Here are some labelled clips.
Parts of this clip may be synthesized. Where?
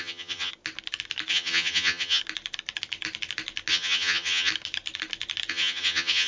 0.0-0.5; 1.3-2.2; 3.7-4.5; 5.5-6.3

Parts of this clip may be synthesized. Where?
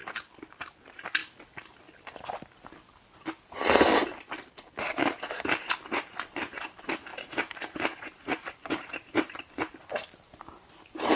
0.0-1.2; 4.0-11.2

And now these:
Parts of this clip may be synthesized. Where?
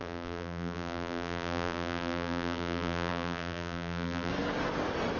0.0-4.3